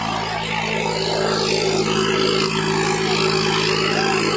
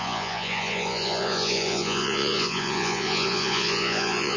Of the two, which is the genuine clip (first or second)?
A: first